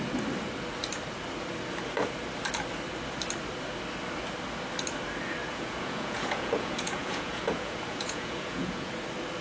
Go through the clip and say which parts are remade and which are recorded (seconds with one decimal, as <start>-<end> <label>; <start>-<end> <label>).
0.0-5.4 recorded; 5.4-8.9 remade; 8.9-9.4 recorded